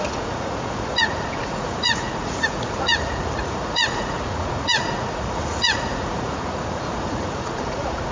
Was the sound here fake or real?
fake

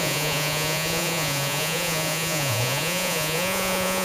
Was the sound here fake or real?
fake